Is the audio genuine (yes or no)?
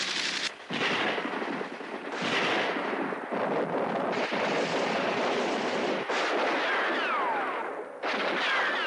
yes